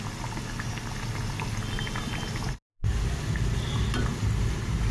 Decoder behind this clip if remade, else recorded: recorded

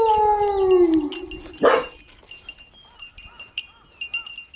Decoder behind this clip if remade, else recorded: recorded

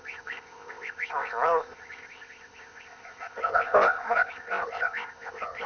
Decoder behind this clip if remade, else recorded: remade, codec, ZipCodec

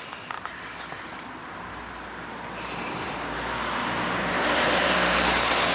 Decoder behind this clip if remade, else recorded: recorded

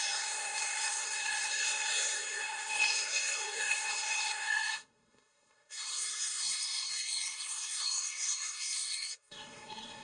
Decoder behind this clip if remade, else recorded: remade, codec, SNAC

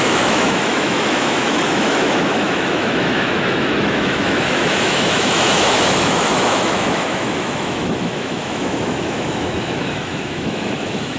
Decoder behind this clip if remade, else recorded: remade, autoencoder, DAC-VAE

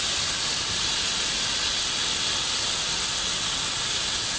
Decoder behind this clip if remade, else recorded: recorded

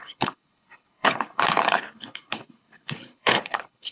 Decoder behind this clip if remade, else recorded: remade, codec, HILCodec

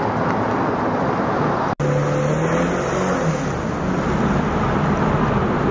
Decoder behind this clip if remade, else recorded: recorded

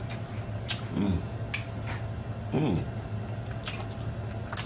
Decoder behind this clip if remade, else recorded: recorded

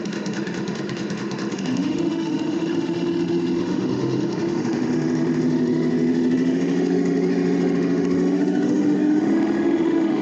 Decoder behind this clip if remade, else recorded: remade, autoencoder, DAC-VAE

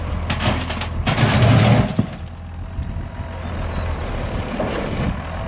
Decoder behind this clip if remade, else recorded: recorded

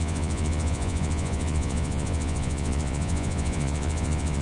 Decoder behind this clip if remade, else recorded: remade, vocoder, Vocos